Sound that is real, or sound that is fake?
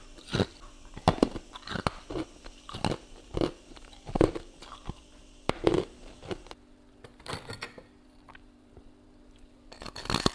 fake